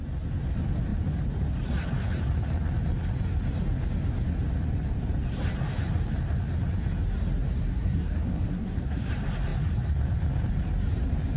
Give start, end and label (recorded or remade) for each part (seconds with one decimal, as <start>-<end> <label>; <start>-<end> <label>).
0.0-7.6 recorded; 7.6-9.1 remade; 9.1-11.4 recorded